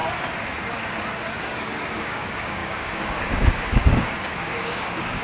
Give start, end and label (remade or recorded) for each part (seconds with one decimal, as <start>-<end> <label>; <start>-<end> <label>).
0.0-1.4 recorded; 1.4-5.2 remade

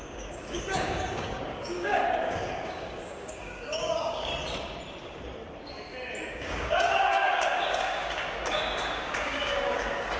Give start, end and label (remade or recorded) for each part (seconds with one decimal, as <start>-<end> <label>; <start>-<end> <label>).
0.0-4.3 remade; 4.3-6.2 recorded; 6.2-10.2 remade

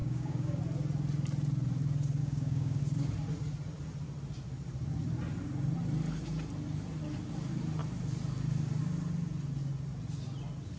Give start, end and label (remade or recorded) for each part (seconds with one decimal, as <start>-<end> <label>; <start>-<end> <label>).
0.0-0.6 remade; 0.6-2.2 recorded; 2.2-2.8 remade; 2.8-10.8 recorded

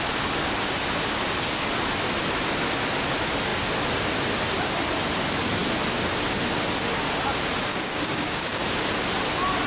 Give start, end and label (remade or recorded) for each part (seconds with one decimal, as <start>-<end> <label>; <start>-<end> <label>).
0.0-7.7 recorded; 7.7-8.6 remade; 8.6-9.7 recorded

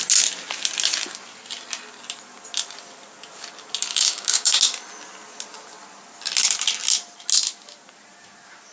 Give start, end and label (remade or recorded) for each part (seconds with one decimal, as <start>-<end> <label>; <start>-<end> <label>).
0.0-3.9 recorded; 3.9-4.6 remade; 4.6-8.7 recorded

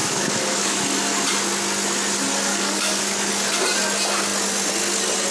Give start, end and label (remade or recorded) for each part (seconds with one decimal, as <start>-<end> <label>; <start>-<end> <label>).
0.0-0.8 remade; 0.8-2.5 recorded; 2.5-3.3 remade; 3.3-5.3 recorded